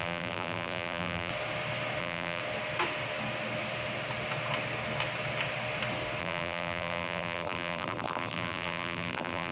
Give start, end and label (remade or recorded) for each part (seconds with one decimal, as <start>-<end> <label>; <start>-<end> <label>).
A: 0.0-1.3 remade; 1.3-2.0 recorded; 2.0-2.4 remade; 2.4-6.2 recorded; 6.2-9.5 remade